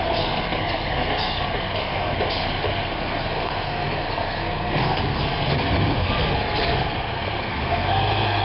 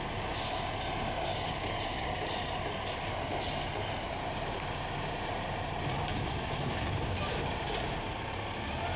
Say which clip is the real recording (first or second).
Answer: second